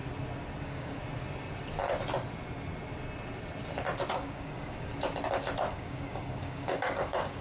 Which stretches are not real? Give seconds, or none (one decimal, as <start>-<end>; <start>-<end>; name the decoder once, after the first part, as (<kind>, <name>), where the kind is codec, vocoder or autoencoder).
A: 0.6-1.0 (codec, DAC); 4.1-4.9; 5.7-7.4